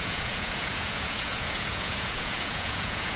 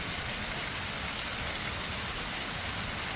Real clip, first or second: second